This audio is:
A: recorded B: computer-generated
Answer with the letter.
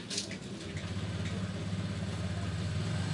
A